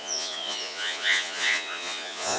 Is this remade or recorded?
remade